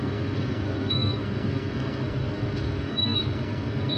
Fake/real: fake